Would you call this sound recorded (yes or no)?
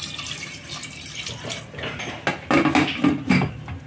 yes